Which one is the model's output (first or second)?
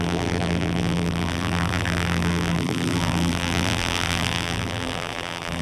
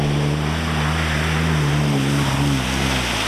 first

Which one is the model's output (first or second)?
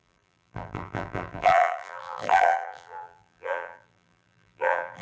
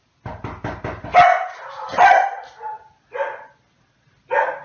first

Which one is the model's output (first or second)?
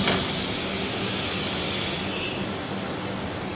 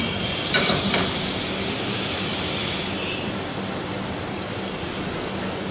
second